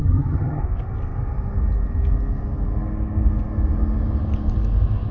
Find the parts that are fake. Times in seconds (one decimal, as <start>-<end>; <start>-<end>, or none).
0.0-0.6